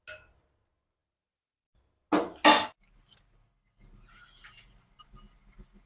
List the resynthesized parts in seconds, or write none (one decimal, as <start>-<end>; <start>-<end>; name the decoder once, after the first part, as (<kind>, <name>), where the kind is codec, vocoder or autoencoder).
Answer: none